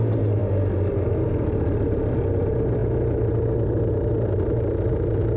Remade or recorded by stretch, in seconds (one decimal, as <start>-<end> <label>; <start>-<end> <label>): 0.0-5.4 recorded